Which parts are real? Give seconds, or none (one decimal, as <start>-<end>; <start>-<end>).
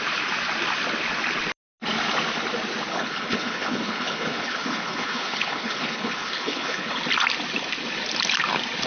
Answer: 0.0-2.9; 7.0-8.9